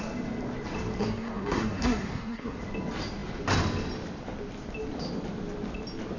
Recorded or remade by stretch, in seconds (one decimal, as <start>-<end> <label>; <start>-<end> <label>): 0.0-1.0 recorded; 1.0-2.6 remade; 2.6-6.2 recorded